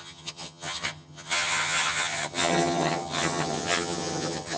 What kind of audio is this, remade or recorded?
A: remade